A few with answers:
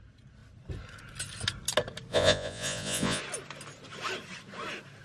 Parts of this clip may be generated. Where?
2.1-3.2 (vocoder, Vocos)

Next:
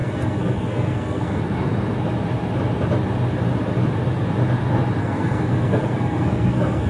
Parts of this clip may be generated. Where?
0.0-1.4 (codec, SNAC); 5.0-6.9

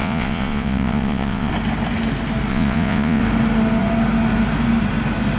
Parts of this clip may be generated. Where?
0.0-1.5 (vocoder, Vocos); 2.5-3.2

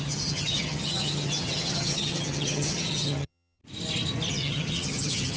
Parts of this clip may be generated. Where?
0.0-3.6 (vocoder, HiFi-GAN); 4.3-5.4

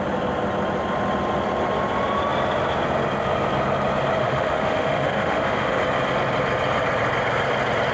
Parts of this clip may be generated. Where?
4.2-5.8 (autoencoder, DAC-VAE)

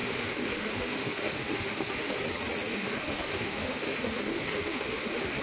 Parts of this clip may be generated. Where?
0.0-2.2 (autoencoder, DAC-VAE); 2.7-5.4

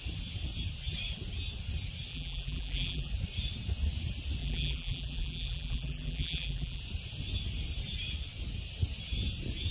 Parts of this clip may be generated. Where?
2.1-3.1 (vocoder, BigVGAN v2); 4.4-6.8

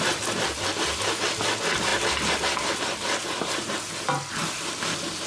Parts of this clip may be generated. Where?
4.4-5.3 (vocoder, BigVGAN v2)